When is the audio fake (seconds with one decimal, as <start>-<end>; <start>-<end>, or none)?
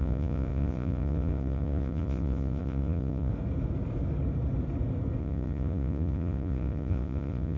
0.0-3.3; 5.2-7.6